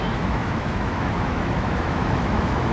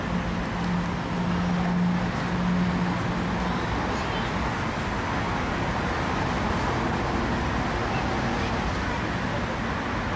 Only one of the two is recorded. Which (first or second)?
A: second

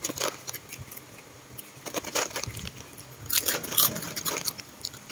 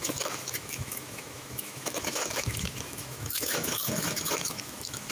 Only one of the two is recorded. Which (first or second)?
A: first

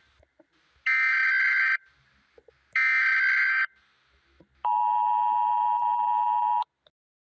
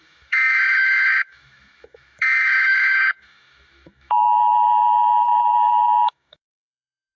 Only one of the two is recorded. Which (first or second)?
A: first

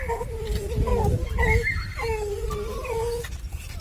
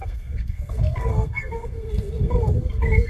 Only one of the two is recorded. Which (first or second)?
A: first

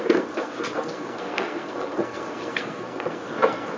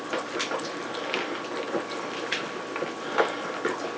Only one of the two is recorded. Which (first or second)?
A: second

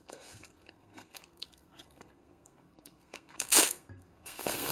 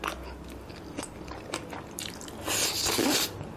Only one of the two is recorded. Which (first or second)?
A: second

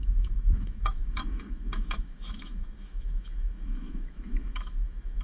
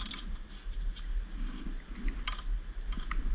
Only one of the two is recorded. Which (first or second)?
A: second